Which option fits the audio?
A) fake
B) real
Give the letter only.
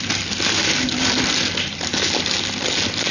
B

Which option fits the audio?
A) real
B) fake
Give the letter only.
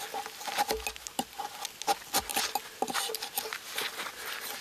A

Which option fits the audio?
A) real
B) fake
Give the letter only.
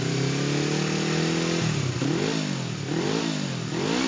A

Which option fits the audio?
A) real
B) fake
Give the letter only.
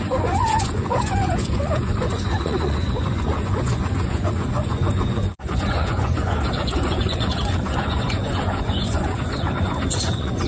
B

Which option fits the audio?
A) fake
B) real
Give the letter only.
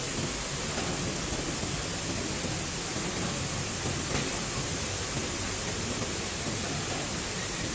B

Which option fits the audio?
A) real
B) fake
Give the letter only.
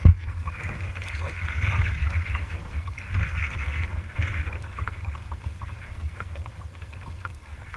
B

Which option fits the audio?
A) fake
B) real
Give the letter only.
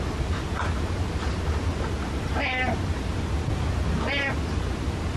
B